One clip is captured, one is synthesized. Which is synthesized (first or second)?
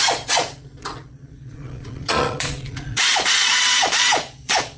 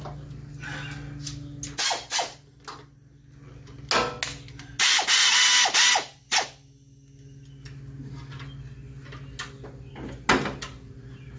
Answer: first